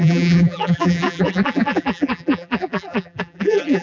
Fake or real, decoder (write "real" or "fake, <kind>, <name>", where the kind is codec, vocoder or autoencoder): fake, vocoder, BigVGAN v2